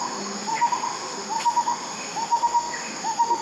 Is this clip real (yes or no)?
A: no